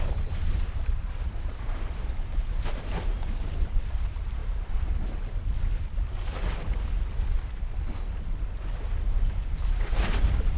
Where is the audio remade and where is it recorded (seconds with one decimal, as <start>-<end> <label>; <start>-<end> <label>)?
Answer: 0.0-4.4 remade; 4.4-8.6 recorded; 8.6-10.6 remade